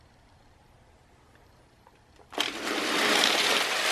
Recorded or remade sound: remade